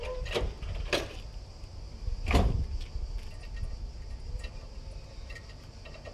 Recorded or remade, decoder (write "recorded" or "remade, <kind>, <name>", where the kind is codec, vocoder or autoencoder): recorded